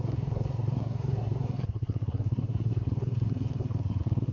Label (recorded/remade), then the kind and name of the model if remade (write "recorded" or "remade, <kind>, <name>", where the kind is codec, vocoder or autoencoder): remade, codec, SNAC